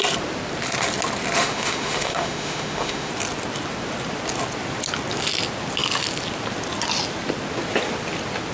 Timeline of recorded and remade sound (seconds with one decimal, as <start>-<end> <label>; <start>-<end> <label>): 0.0-1.4 recorded; 1.4-3.1 remade; 3.1-8.5 recorded